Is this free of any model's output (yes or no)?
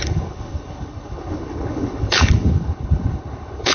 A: no